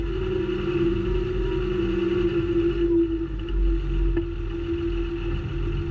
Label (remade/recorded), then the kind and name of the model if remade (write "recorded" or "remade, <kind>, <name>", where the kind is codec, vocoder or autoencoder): recorded